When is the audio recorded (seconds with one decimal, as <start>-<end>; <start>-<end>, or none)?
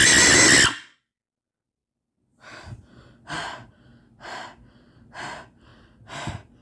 0.0-6.6